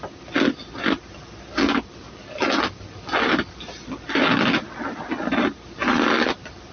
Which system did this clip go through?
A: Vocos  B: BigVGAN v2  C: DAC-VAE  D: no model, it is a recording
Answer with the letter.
D